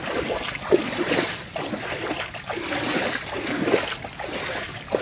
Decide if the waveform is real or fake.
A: real